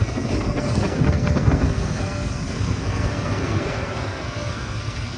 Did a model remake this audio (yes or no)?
yes